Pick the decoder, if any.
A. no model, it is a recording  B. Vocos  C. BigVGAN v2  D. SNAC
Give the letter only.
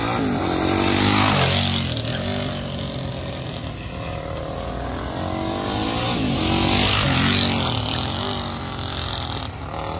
A